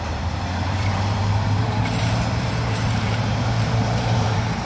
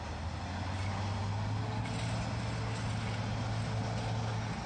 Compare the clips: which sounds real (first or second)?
second